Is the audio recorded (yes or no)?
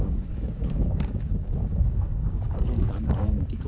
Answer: no